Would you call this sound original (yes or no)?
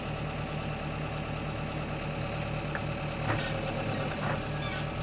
yes